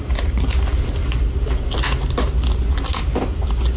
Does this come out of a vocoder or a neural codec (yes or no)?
no